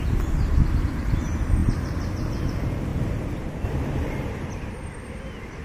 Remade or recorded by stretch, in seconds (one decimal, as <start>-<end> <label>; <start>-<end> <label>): 0.0-2.9 recorded; 2.9-5.1 remade; 5.1-5.6 recorded